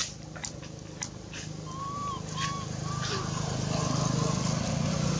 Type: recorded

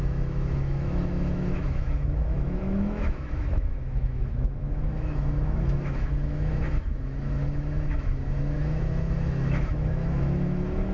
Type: remade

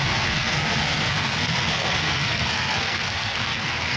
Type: remade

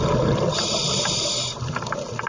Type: recorded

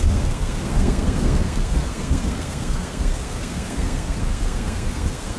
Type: remade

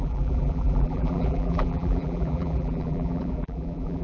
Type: remade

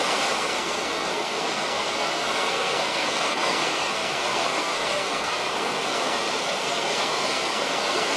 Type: remade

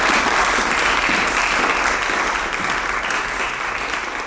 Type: recorded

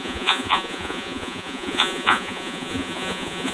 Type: remade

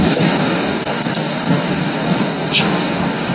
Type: remade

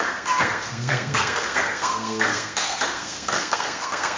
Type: remade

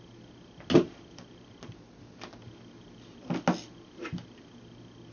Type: recorded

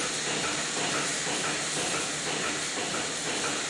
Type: recorded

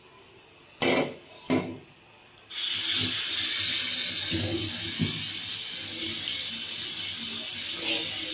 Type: recorded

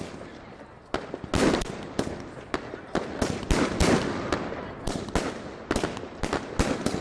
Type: recorded